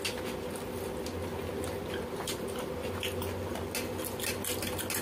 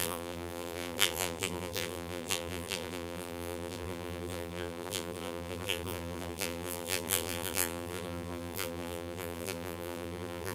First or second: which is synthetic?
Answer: second